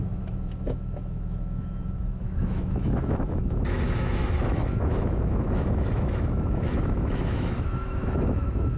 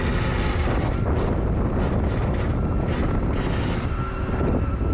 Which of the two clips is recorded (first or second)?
second